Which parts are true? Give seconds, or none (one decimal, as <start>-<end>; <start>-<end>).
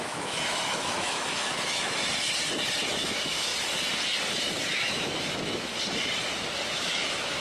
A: 2.0-2.9; 3.5-4.7; 5.7-6.7